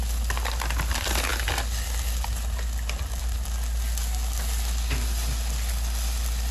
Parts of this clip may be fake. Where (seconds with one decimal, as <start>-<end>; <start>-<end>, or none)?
none

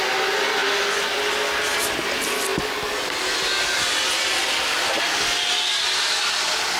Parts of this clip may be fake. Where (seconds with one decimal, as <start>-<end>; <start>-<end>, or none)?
none